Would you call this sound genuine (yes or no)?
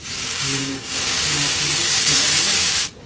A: no